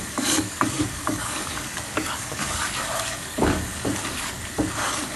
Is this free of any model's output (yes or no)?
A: no